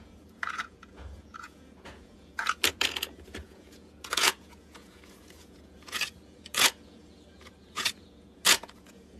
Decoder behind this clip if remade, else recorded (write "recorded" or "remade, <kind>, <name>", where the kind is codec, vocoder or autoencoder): remade, vocoder, Vocos